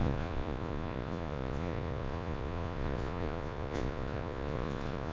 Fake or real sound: fake